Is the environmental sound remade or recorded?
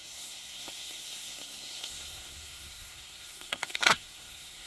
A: remade